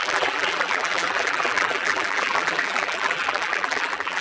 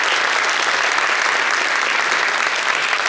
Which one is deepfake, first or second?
first